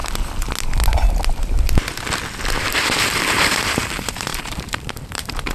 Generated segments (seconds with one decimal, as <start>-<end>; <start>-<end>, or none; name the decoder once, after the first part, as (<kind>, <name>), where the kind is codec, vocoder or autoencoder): 2.6-5.5 (vocoder, BigVGAN v2)